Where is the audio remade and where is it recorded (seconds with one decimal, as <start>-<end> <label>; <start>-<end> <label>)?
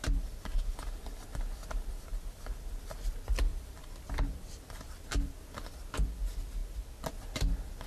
0.0-1.3 recorded; 1.3-2.8 remade; 2.8-3.5 recorded; 3.5-5.3 remade; 5.3-7.9 recorded